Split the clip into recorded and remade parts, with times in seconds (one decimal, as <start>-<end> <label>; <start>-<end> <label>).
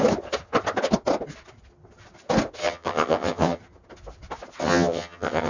0.0-2.6 recorded; 2.6-3.6 remade; 3.6-4.6 recorded; 4.6-5.5 remade